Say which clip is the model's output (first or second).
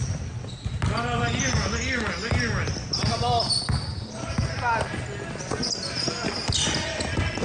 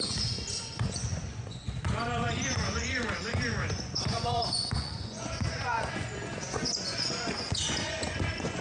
second